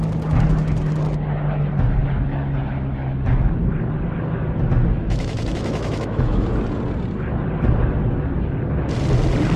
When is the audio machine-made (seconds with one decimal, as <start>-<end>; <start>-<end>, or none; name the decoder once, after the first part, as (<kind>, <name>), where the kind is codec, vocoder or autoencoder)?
5.0-6.5 (autoencoder, DAC-VAE)